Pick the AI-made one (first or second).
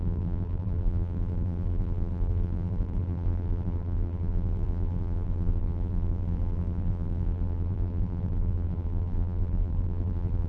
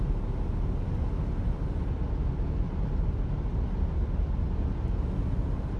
first